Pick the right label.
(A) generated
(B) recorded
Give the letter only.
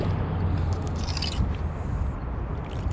B